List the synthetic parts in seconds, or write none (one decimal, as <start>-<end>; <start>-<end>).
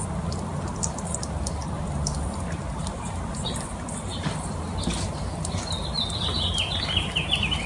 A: 0.0-1.6; 2.6-7.7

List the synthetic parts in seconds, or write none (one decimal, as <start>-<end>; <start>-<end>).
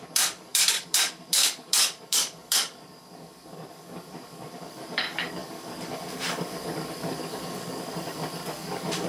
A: 0.0-9.1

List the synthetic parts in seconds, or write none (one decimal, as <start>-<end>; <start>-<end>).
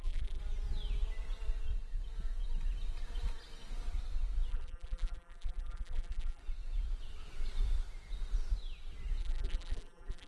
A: 0.0-0.4; 4.5-6.4; 9.2-10.3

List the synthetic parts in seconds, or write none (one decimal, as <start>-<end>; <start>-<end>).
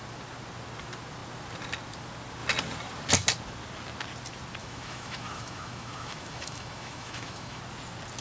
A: 4.6-7.6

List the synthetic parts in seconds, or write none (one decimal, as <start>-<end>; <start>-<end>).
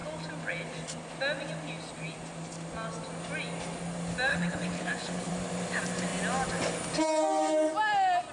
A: 4.3-5.3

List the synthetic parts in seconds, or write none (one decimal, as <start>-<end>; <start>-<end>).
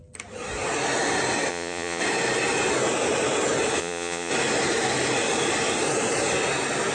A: 1.5-2.0; 3.8-4.3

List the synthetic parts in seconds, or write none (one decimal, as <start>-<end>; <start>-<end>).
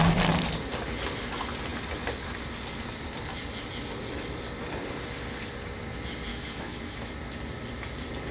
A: 6.3-7.1